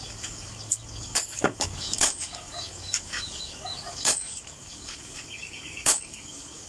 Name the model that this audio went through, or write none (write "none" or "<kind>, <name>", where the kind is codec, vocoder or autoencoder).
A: codec, DAC